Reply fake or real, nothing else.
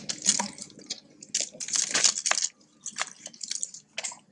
real